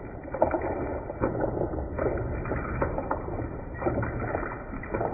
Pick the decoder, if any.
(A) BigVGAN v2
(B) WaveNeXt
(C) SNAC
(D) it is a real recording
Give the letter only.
D